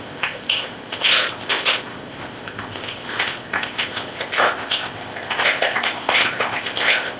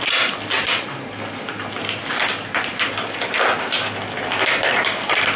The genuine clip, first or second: second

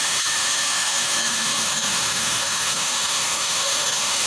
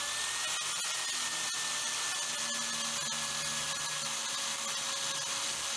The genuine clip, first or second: second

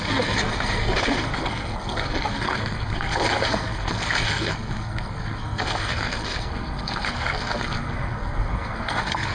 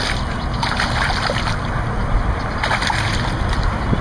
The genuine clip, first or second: second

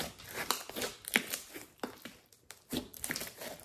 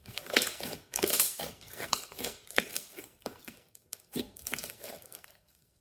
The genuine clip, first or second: first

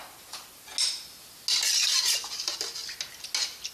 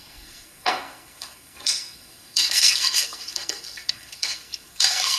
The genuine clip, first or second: first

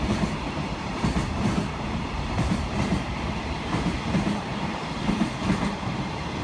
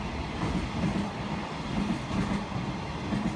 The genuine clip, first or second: second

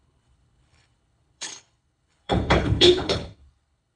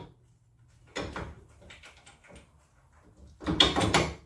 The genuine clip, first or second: second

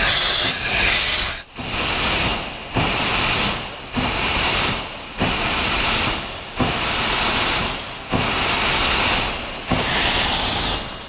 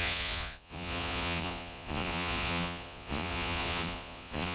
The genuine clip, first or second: first